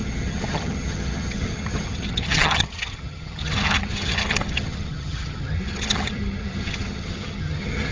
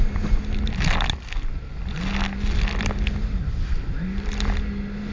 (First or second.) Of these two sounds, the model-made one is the first